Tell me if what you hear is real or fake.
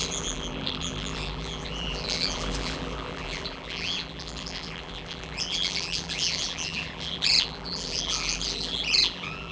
fake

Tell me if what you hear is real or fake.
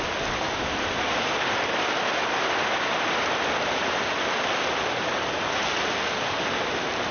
real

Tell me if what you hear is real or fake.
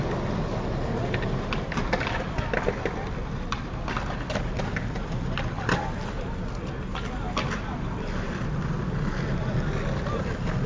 real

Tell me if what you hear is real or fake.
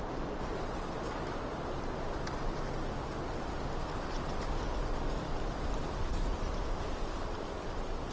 real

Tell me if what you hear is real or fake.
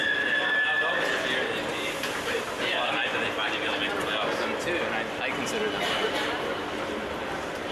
real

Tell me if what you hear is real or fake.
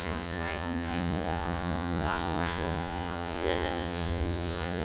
fake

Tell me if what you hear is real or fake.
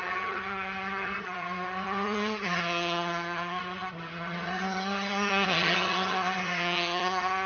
fake